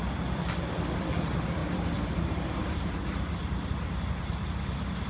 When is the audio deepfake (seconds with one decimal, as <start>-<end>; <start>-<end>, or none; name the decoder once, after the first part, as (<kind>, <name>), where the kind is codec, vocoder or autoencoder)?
1.6-3.3 (vocoder, BigVGAN v2)